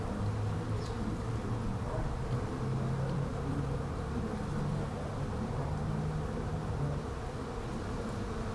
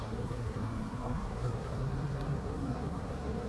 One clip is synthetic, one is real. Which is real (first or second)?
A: first